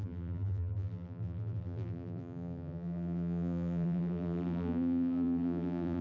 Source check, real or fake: fake